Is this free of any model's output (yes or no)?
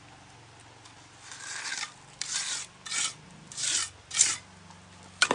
yes